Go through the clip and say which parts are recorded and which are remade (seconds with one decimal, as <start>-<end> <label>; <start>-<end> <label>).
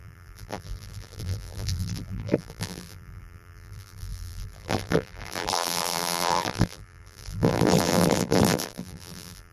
0.0-9.5 remade